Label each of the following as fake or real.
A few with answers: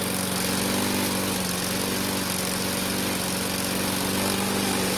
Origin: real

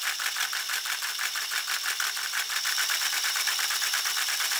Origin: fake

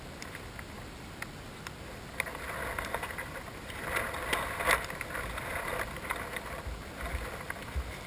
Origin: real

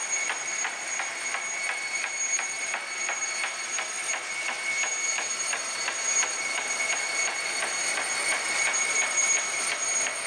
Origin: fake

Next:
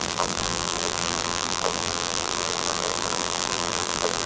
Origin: fake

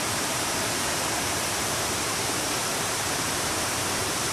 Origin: fake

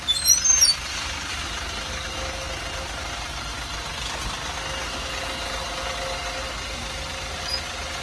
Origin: real